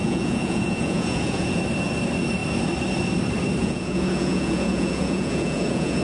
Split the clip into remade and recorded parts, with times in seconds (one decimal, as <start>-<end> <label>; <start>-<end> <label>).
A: 0.0-1.6 remade; 1.6-3.6 recorded; 3.6-6.0 remade